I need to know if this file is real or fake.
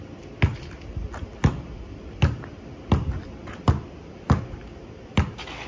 real